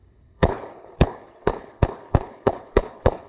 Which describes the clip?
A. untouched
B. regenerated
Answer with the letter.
B